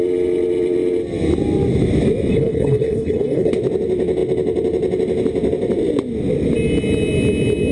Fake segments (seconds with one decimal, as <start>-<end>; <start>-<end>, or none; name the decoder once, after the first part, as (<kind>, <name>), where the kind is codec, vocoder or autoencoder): 2.3-3.5 (codec, HILCodec)